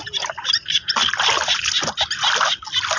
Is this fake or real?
real